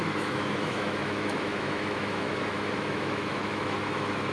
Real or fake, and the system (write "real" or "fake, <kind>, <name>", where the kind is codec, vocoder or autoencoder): fake, autoencoder, DAC-VAE